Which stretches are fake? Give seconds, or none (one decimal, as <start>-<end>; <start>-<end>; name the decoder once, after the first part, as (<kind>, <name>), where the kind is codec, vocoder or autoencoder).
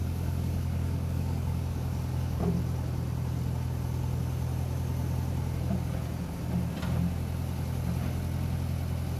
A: 0.0-2.4 (codec, DAC)